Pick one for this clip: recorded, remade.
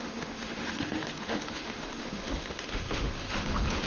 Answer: remade